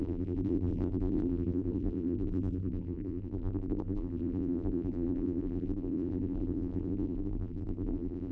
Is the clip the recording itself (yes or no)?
no